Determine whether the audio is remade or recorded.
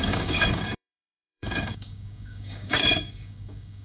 remade